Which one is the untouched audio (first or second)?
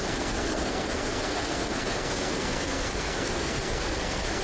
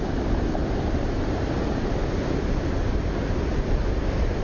second